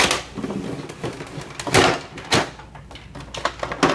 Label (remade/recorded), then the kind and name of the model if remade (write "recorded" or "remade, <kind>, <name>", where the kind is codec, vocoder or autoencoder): recorded